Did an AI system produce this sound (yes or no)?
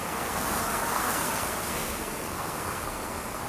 yes